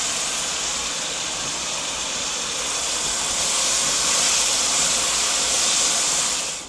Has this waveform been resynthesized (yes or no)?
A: no